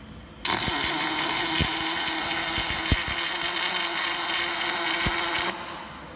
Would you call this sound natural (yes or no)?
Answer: yes